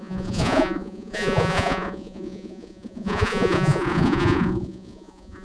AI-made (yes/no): yes